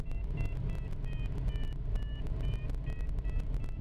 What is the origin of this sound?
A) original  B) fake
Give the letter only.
A